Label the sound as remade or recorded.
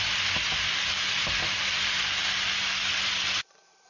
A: recorded